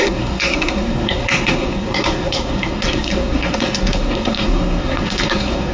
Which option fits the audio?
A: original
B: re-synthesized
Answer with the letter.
B